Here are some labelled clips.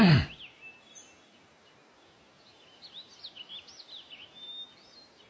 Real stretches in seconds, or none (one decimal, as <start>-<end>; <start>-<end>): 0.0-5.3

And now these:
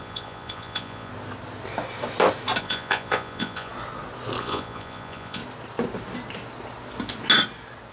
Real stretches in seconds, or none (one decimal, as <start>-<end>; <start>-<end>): 1.1-2.6; 3.7-4.4; 5.4-7.9

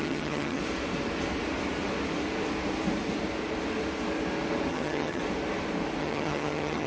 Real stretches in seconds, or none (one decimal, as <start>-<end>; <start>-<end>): 0.6-4.7; 5.2-6.0

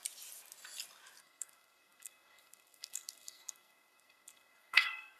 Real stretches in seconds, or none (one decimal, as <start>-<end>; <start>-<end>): 0.0-1.2